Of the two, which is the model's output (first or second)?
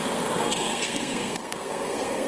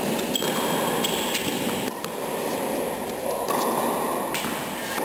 first